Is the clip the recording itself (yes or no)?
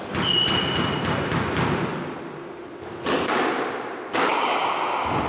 yes